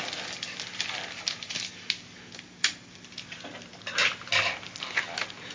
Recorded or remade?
recorded